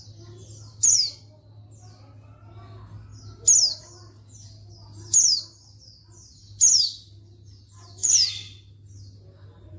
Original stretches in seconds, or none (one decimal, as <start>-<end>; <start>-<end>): 0.0-9.8